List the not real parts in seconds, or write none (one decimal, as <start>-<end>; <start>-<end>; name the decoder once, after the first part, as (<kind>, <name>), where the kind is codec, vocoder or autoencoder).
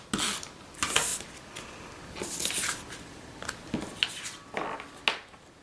none